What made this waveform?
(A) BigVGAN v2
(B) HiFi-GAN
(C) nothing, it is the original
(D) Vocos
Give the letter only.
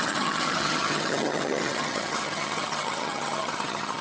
B